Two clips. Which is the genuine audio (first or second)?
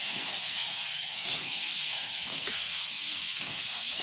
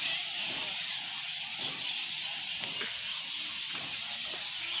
second